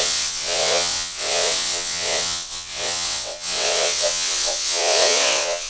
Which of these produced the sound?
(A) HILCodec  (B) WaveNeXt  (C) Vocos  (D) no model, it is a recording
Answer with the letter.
B